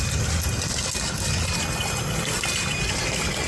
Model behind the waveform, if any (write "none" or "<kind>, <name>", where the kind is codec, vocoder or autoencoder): none